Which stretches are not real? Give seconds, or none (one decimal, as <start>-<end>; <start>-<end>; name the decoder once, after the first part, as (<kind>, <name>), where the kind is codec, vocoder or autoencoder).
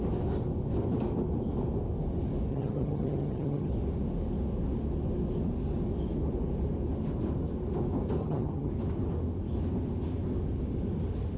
2.5-3.7 (vocoder, HiFi-GAN); 8.2-8.7